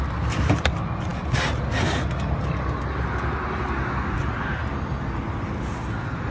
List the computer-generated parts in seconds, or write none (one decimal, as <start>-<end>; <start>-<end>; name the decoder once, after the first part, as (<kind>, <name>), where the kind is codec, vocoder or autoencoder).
none